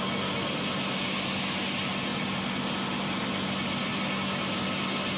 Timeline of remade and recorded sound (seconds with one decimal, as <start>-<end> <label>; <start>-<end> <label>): 0.0-5.2 recorded